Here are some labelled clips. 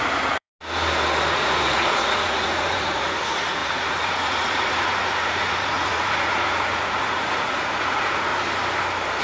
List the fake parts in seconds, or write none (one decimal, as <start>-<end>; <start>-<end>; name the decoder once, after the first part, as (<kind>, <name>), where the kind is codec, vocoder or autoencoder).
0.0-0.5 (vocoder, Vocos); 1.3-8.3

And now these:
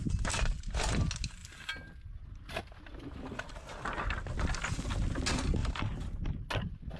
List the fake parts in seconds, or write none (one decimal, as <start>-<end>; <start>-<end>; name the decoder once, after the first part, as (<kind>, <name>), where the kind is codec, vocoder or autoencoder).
0.0-0.7 (vocoder, BigVGAN v2); 1.4-3.5

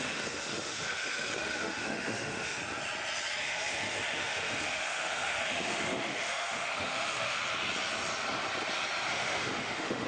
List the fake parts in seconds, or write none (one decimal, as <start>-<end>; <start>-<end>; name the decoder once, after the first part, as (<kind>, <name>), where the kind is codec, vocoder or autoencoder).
0.0-2.6 (autoencoder, DAC-VAE); 3.4-7.4; 9.1-10.1

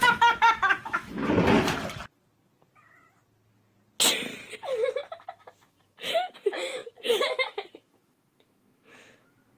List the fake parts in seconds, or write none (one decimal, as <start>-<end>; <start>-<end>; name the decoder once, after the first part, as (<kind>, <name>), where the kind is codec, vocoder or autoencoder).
0.0-1.2 (autoencoder, DAC-VAE); 5.1-9.6